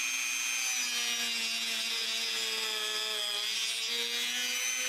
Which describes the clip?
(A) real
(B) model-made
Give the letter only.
A